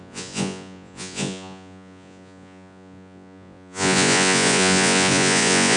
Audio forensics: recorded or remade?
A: remade